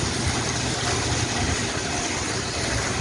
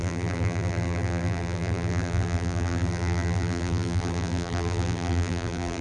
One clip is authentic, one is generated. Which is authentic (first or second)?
first